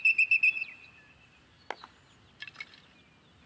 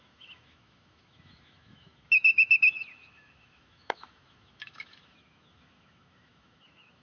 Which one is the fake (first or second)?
second